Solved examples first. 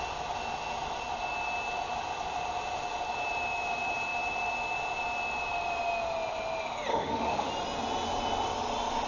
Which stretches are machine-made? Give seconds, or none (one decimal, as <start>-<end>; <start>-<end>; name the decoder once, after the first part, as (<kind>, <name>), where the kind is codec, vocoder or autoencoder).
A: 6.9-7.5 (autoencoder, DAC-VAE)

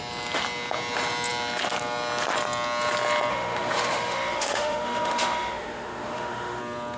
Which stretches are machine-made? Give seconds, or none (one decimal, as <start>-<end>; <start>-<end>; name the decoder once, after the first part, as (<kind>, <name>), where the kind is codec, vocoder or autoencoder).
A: 3.3-6.6 (autoencoder, DAC-VAE)

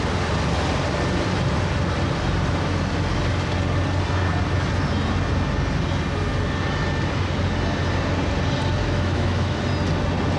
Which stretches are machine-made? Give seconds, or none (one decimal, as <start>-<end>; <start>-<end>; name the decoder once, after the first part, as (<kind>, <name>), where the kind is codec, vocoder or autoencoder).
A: 8.8-9.6 (autoencoder, DAC-VAE)

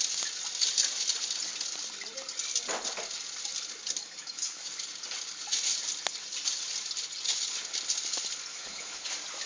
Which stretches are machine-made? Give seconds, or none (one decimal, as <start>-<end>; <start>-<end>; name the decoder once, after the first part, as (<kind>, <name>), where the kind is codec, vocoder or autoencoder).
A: 4.0-4.7 (autoencoder, DAC-VAE); 8.5-9.0

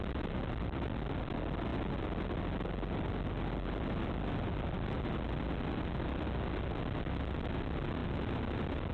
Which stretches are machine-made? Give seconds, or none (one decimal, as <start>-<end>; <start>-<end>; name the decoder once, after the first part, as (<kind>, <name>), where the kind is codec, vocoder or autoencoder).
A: none

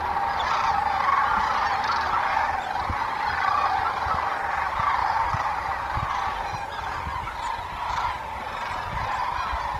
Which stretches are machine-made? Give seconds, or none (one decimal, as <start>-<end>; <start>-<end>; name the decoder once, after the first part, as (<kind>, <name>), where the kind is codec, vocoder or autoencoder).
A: none